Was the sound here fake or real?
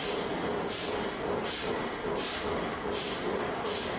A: fake